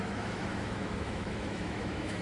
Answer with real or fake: fake